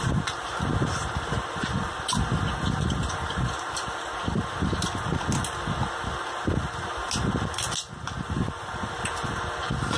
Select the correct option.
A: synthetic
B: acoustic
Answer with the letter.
B